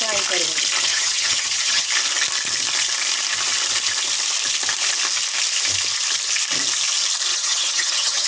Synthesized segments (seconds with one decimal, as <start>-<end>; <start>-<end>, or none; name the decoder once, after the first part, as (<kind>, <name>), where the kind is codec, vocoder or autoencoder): 0.9-1.9 (vocoder, HiFi-GAN); 7.3-8.3